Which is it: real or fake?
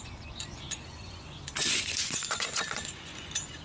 fake